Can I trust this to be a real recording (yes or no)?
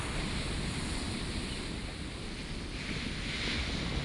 yes